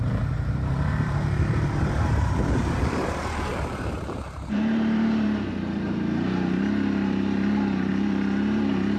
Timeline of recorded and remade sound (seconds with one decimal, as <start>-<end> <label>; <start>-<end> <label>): 0.0-9.0 remade